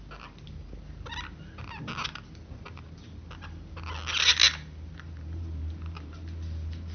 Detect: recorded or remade recorded